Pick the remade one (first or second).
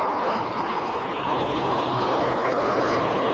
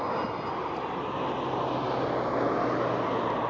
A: first